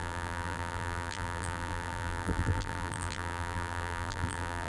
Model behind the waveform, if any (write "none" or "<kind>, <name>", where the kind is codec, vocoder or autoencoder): vocoder, BigVGAN v2